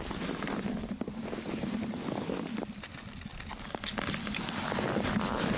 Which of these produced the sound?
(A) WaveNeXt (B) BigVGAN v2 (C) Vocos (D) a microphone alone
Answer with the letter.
B